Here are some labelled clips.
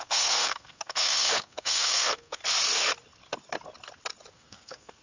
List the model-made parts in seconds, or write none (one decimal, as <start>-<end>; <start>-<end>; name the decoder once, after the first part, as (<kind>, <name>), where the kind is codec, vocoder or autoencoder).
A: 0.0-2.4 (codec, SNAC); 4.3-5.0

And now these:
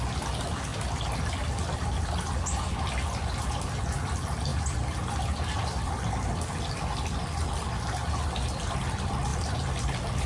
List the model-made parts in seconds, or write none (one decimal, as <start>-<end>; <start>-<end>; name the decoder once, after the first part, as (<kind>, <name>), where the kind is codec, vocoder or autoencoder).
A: none

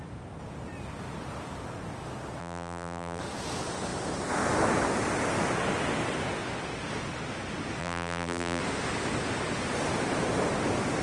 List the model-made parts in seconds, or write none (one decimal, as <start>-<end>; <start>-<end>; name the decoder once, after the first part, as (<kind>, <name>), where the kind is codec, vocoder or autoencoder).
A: 2.4-3.2 (vocoder, BigVGAN v2); 7.8-8.6

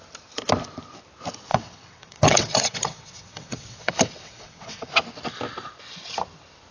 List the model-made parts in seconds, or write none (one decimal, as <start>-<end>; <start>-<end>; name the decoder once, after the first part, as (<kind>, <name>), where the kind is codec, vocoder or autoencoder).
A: 1.5-4.9 (vocoder, WaveNeXt)

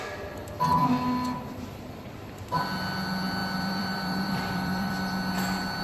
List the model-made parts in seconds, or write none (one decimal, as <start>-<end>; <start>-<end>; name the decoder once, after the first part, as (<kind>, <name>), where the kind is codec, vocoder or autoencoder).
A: 3.4-4.9 (vocoder, BigVGAN v2)

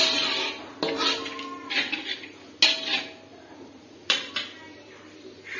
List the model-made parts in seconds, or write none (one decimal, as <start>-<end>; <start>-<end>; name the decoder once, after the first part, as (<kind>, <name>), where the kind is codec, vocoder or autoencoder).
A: 3.3-4.3 (vocoder, Vocos)

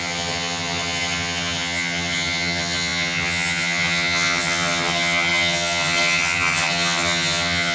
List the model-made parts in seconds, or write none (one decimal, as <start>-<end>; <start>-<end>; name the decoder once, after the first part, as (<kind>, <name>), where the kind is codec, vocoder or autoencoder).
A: 0.0-7.7 (vocoder, HiFi-GAN)